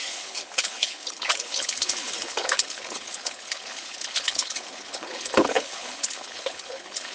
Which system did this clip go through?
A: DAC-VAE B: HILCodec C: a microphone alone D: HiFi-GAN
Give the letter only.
B